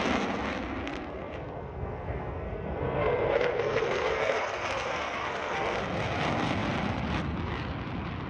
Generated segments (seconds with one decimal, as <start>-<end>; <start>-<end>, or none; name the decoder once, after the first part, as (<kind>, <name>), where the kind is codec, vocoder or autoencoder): 0.8-5.8 (codec, SNAC)